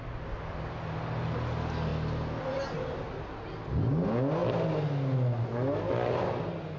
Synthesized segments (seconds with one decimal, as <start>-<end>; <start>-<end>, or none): none